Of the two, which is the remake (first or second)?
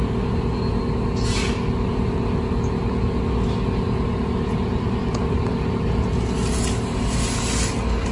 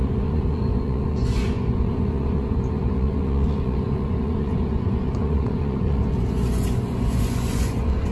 second